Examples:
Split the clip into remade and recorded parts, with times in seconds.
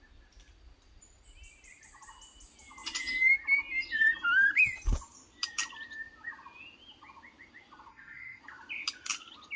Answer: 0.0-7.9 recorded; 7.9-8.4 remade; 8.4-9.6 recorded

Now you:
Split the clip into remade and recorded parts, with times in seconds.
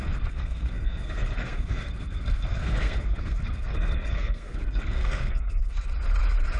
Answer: 0.0-5.9 remade; 5.9-6.6 recorded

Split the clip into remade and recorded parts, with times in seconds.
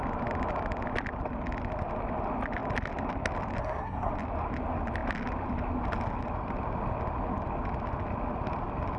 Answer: 0.0-3.6 recorded; 3.6-4.1 remade; 4.1-9.0 recorded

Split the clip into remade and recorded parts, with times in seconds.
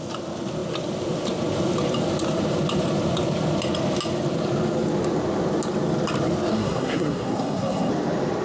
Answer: 0.0-6.5 recorded; 6.5-7.9 remade; 7.9-8.4 recorded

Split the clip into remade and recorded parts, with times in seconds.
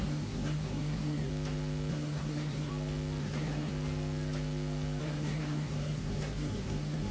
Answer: 0.0-1.3 remade; 1.3-1.9 recorded; 1.9-2.7 remade; 2.7-3.2 recorded; 3.2-3.7 remade; 3.7-5.0 recorded; 5.0-7.1 remade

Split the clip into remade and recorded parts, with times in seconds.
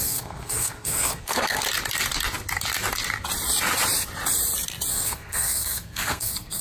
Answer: 0.0-1.6 remade; 1.6-4.9 recorded; 4.9-6.6 remade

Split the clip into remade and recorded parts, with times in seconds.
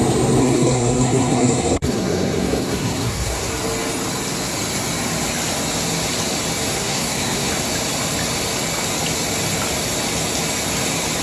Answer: 0.0-0.4 recorded; 0.4-3.5 remade; 3.5-6.7 recorded; 6.7-7.5 remade; 7.5-11.2 recorded